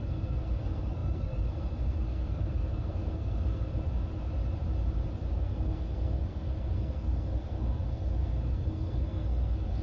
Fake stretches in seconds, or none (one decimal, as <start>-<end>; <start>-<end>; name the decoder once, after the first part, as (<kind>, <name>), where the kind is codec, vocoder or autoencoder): 0.0-3.7 (codec, SNAC); 5.3-9.8